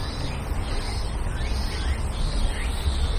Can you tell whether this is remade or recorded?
recorded